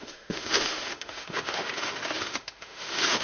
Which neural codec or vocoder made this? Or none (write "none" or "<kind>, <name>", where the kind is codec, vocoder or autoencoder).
autoencoder, DAC-VAE